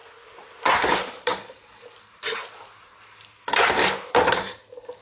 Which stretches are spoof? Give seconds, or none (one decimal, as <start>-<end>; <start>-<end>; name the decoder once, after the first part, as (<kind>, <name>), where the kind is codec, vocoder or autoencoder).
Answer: none